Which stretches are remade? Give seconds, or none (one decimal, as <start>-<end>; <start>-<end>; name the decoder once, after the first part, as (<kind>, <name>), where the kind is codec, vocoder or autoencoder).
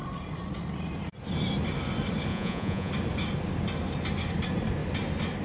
2.3-2.9 (vocoder, Vocos)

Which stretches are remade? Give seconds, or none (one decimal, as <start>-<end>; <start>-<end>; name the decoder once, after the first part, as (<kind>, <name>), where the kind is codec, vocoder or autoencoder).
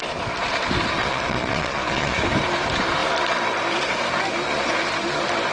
1.0-2.2 (vocoder, Vocos)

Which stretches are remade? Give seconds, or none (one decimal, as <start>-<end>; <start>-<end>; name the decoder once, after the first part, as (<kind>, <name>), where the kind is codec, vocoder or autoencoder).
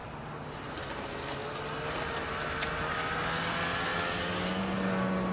none